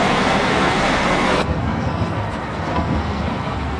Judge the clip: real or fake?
fake